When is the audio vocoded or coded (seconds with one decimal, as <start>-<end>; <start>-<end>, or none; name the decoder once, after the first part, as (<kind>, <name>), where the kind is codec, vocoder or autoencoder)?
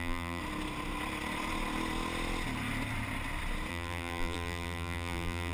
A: 0.0-0.4 (vocoder, BigVGAN v2); 3.7-5.5